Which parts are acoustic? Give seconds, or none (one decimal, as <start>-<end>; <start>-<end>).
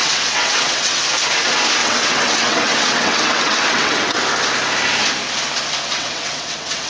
1.0-1.8; 4.2-5.9